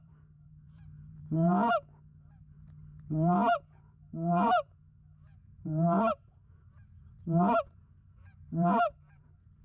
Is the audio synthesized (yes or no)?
yes